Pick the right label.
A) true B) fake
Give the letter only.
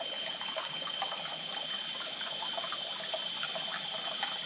A